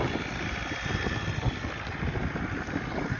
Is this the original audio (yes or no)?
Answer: yes